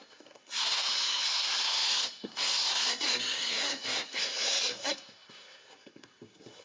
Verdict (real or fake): fake